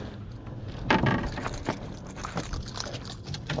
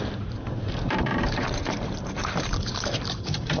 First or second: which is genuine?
first